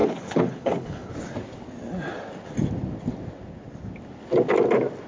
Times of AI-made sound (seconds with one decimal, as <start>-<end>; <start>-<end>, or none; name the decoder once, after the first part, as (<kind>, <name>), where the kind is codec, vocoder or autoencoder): 0.0-1.1 (codec, HILCodec)